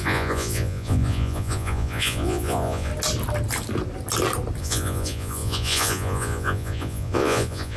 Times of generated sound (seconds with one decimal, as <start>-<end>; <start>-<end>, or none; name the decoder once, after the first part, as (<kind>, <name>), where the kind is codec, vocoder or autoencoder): 0.0-2.9 (vocoder, Vocos); 4.6-7.8